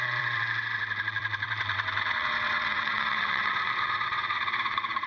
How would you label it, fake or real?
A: fake